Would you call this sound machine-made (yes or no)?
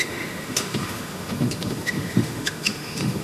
yes